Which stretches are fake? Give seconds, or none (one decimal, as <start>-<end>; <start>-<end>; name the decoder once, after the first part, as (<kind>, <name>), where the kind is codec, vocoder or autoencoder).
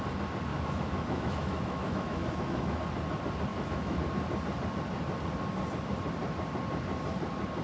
0.5-2.8 (autoencoder, DAC-VAE); 3.5-4.0